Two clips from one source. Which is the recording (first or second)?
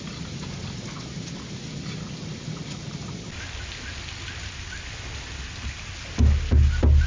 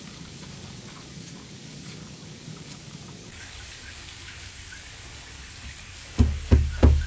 first